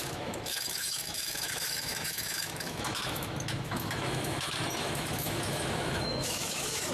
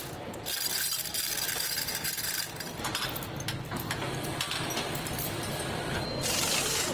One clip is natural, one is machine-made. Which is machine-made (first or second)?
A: first